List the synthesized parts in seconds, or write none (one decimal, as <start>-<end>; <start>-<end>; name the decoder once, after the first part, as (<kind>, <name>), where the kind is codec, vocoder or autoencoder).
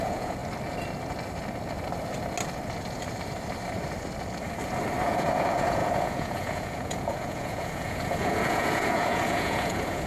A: 0.0-0.4 (vocoder, Vocos); 5.0-10.1